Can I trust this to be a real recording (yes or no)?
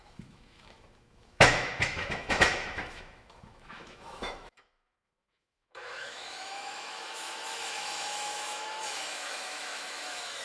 no